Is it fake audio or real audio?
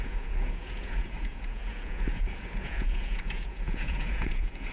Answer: fake